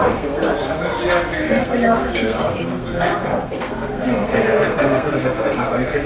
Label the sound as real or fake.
fake